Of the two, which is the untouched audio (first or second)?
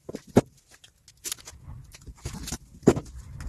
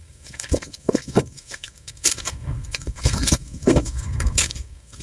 first